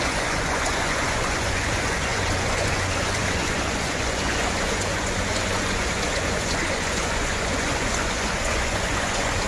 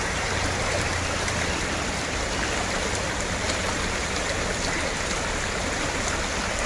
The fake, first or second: first